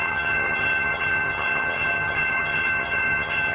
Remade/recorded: remade